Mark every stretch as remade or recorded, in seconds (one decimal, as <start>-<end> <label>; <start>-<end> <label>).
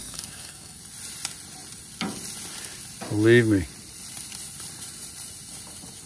0.0-0.8 remade; 0.8-6.1 recorded